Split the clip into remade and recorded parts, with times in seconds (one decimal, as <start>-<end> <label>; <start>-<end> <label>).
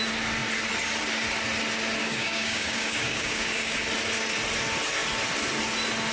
0.0-2.0 recorded; 2.0-3.9 remade; 3.9-6.1 recorded